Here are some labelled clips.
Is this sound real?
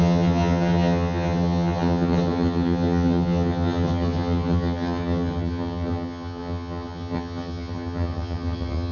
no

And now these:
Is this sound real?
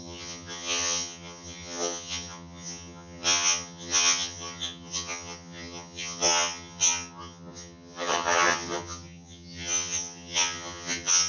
no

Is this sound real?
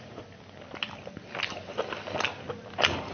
yes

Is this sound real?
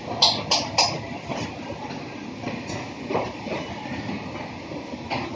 yes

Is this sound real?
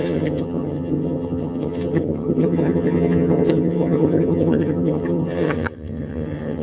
no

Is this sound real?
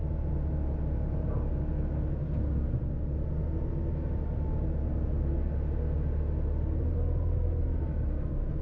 yes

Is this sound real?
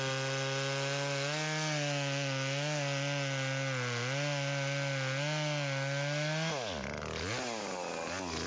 yes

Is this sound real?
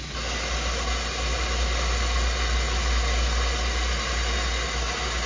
yes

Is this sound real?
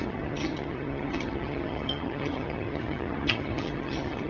no